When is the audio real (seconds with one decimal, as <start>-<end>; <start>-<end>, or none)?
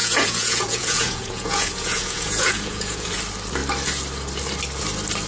3.2-5.3